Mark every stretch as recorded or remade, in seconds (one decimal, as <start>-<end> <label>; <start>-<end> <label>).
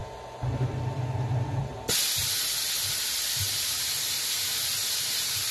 0.0-5.5 recorded